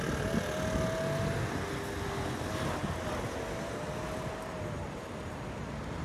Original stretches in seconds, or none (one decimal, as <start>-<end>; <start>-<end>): 0.0-6.0